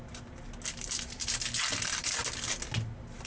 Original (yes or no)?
yes